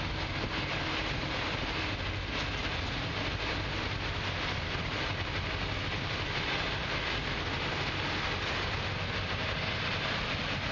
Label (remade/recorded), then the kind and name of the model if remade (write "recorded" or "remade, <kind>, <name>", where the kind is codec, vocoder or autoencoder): recorded